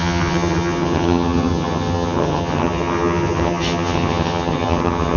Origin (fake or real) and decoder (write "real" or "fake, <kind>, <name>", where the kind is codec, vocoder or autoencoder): fake, vocoder, HiFi-GAN